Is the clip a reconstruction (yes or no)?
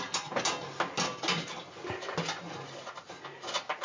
no